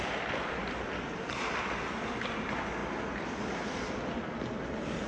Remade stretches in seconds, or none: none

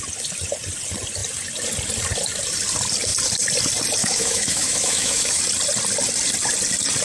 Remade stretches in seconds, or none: 4.0-5.4 (autoencoder, DAC-VAE)

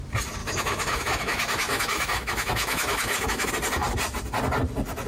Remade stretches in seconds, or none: 0.4-3.5 (autoencoder, DAC-VAE)

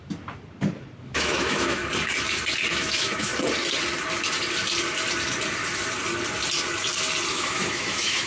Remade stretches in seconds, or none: 1.0-1.8 (autoencoder, DAC-VAE); 2.7-3.3; 7.3-8.3

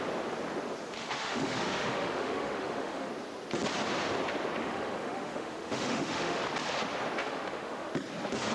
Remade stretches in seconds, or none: 1.0-3.1 (autoencoder, DAC-VAE); 4.6-6.4; 7.2-7.9

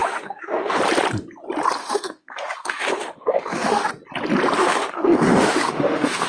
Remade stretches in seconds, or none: 0.0-0.8 (autoencoder, DAC-VAE); 1.8-3.9; 4.6-6.3

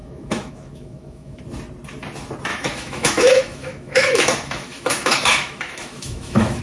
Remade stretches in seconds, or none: 0.0-1.4 (autoencoder, DAC-VAE); 2.5-6.6